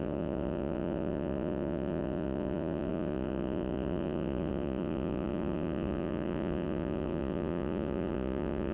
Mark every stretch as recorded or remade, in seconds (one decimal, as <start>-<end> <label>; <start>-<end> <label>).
0.0-8.7 remade